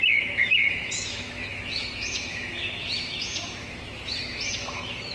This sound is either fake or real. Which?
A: fake